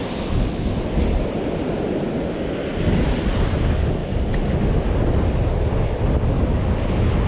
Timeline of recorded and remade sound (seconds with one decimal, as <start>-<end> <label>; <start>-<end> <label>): 0.0-7.3 recorded